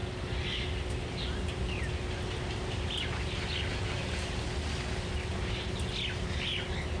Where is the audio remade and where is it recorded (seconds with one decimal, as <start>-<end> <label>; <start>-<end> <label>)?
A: 0.0-7.0 recorded